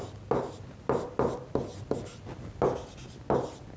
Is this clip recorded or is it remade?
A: recorded